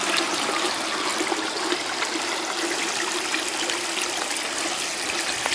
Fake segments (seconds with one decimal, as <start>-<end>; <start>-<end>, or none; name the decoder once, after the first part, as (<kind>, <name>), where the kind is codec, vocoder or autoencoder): none